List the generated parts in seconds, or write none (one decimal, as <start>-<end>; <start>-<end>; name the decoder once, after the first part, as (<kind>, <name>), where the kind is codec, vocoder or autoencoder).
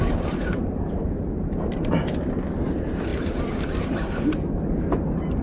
0.0-5.4 (vocoder, BigVGAN v2)